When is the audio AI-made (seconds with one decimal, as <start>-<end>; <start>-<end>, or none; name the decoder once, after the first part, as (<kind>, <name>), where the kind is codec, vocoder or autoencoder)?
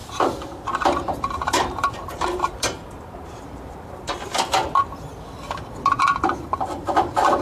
0.0-4.8 (vocoder, BigVGAN v2); 6.4-7.4